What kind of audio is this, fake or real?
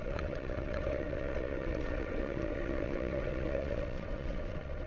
fake